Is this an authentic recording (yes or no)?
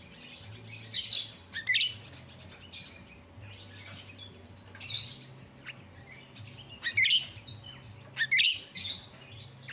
yes